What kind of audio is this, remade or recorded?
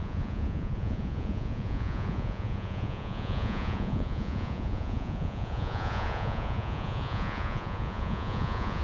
remade